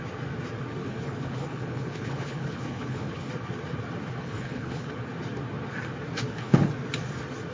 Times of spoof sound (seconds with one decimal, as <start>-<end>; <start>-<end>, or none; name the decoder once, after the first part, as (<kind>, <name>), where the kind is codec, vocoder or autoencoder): 0.8-3.3 (codec, HILCodec); 4.2-4.9; 6.2-6.7